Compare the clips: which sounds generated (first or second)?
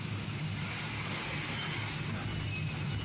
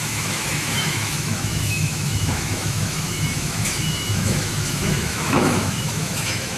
second